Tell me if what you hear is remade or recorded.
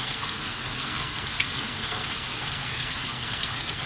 remade